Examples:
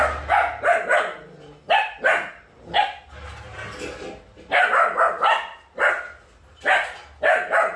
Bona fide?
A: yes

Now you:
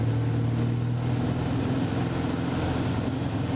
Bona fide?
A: yes